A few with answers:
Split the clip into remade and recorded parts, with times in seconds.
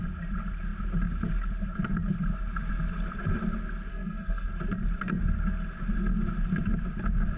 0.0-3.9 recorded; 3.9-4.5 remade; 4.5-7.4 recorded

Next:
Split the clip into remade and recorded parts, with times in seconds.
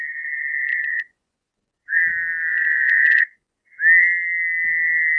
0.0-0.7 recorded; 0.7-2.0 remade; 2.0-2.5 recorded; 2.5-3.7 remade; 3.7-5.2 recorded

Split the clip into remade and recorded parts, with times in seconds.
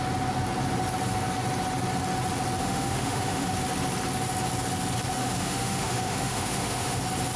0.0-2.6 recorded; 2.6-3.5 remade; 3.5-5.2 recorded; 5.2-7.0 remade; 7.0-7.4 recorded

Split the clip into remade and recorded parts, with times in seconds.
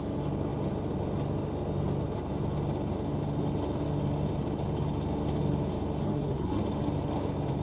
0.0-6.0 recorded; 6.0-6.6 remade; 6.6-7.6 recorded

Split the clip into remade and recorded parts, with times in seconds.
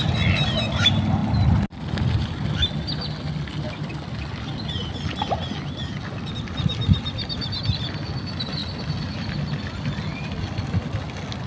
0.0-11.5 recorded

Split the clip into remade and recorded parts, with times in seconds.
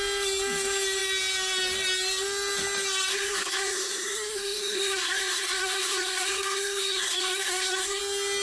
0.0-3.1 recorded; 3.1-8.0 remade; 8.0-8.4 recorded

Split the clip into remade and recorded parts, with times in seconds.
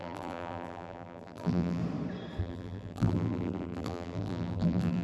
0.0-1.8 remade; 1.8-2.4 recorded; 2.4-5.0 remade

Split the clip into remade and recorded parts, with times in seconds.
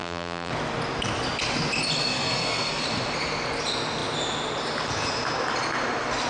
0.0-0.5 remade; 0.5-6.3 recorded